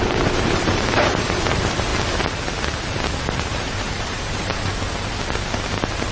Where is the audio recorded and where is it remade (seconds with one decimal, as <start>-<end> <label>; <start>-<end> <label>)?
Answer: 0.0-1.9 remade; 1.9-3.4 recorded; 3.4-4.7 remade; 4.7-6.1 recorded